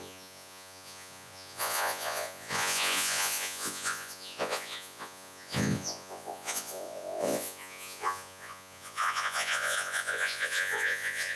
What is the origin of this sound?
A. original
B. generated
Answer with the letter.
B